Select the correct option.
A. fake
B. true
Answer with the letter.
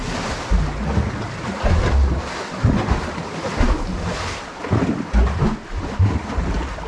B